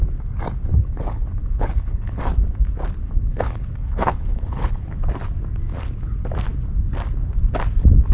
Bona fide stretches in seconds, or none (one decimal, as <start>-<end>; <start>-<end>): 0.0-0.7; 2.2-3.0; 4.9-8.1